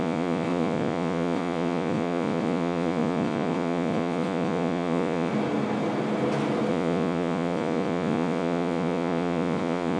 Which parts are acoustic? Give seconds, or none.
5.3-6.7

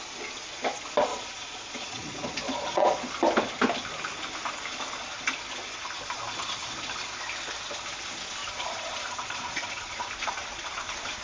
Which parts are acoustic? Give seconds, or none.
0.0-1.1; 3.1-8.4; 10.1-11.2

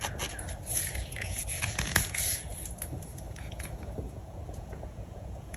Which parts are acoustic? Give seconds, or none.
0.0-0.7; 2.2-3.1

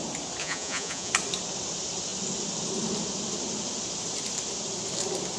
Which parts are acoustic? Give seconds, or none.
0.0-0.4; 1.1-5.4